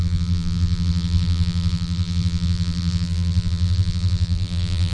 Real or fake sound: fake